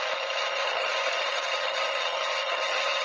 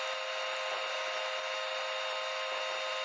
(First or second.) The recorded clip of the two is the second